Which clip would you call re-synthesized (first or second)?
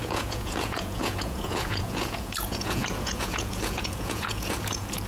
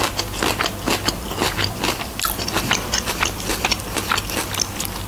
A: first